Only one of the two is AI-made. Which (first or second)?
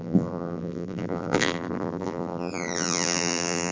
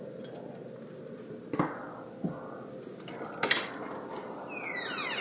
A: first